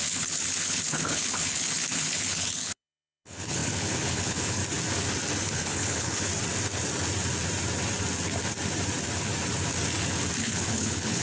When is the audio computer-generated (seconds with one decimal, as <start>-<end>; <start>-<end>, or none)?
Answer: 0.0-4.6; 5.4-6.3; 10.4-11.2